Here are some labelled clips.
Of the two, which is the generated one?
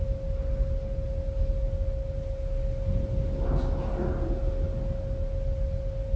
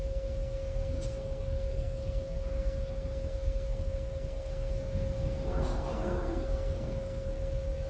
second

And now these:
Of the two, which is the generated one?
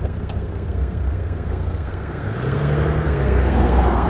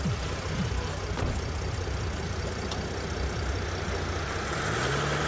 first